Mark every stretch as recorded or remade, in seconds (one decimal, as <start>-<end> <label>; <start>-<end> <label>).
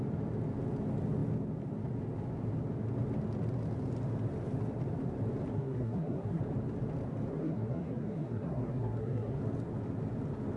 0.0-5.5 recorded; 5.5-6.4 remade; 6.4-7.3 recorded; 7.3-9.4 remade; 9.4-10.6 recorded